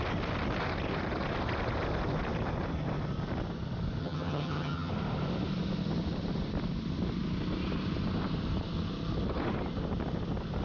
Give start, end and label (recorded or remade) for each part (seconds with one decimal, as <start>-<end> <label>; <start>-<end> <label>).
0.0-4.0 recorded; 4.0-4.9 remade; 4.9-10.6 recorded